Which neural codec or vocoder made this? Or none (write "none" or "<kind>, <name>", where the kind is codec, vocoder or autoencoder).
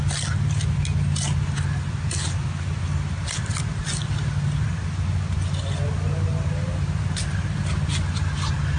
none